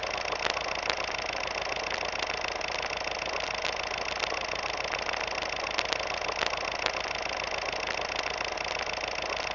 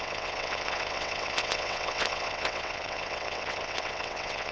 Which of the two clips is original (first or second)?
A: first